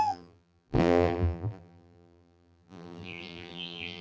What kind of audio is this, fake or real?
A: fake